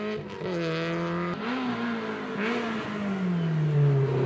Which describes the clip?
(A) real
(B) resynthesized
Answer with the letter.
A